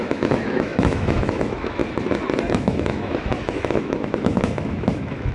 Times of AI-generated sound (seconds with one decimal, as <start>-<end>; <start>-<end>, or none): 0.0-1.8; 2.5-5.3

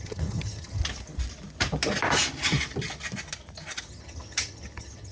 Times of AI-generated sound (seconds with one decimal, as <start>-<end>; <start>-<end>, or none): 0.0-0.8; 3.9-5.1